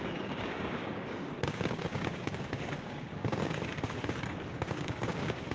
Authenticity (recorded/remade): remade